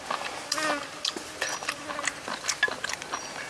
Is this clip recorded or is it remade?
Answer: recorded